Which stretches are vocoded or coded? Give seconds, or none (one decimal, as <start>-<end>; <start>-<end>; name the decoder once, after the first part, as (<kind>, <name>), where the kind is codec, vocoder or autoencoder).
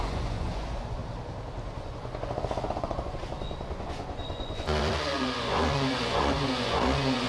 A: 0.0-1.0 (vocoder, Vocos); 1.8-7.3